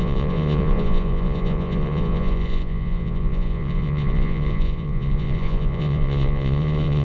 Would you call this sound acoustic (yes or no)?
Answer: no